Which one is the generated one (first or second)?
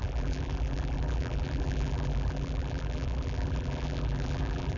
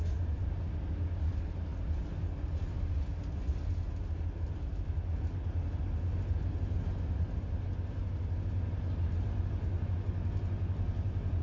first